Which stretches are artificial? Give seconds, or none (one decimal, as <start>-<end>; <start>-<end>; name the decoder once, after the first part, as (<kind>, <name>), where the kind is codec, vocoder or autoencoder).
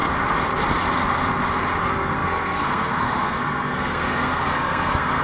1.8-5.2 (codec, SNAC)